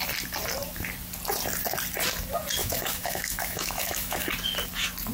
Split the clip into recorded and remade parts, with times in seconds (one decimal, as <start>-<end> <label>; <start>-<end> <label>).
0.0-2.6 recorded; 2.6-4.3 remade; 4.3-5.1 recorded